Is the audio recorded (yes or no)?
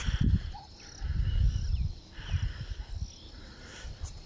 yes